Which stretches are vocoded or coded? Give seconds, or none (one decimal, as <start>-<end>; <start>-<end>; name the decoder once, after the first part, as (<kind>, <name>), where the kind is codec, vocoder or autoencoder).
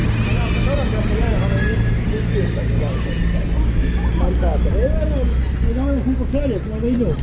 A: none